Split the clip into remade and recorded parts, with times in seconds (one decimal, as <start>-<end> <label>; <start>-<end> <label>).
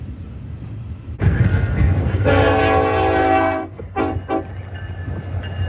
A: 0.0-1.2 recorded; 1.2-2.6 remade; 2.6-3.2 recorded; 3.2-4.0 remade; 4.0-5.7 recorded